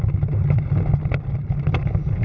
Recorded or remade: recorded